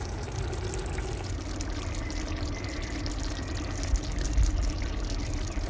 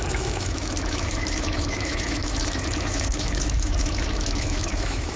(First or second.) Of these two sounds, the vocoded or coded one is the second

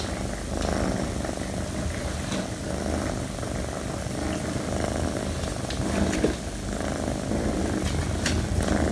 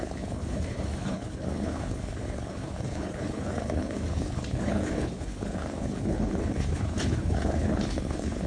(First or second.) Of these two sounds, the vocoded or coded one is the second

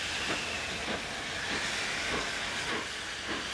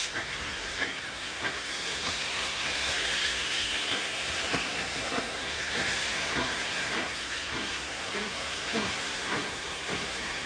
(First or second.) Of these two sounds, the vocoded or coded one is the second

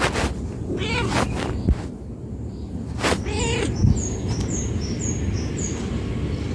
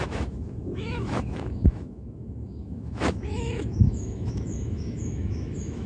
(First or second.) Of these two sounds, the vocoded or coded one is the second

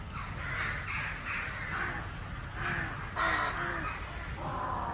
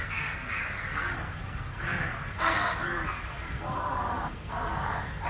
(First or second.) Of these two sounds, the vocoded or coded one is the second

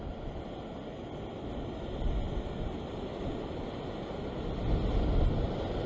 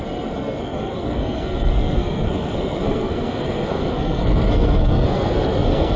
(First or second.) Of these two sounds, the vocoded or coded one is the second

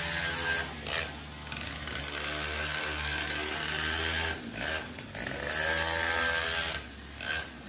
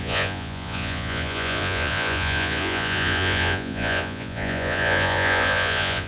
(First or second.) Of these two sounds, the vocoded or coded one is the second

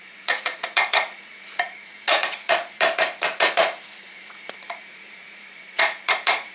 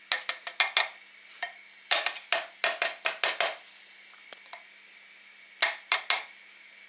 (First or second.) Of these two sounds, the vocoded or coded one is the first